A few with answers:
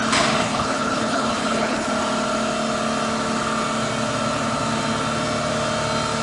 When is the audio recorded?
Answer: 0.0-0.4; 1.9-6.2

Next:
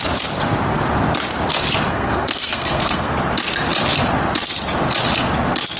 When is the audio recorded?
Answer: 0.0-1.9; 3.1-5.8

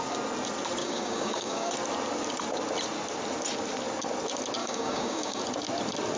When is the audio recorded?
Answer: 0.0-0.8; 1.7-4.6; 5.4-6.2